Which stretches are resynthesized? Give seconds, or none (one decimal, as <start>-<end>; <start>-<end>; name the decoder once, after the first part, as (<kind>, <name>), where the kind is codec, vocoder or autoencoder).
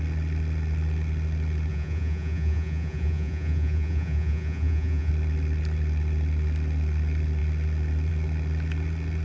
1.7-5.1 (vocoder, Vocos)